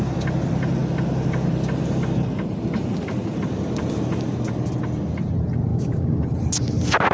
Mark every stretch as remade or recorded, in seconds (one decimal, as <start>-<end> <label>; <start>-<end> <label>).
0.0-5.7 recorded; 5.7-6.2 remade; 6.2-7.1 recorded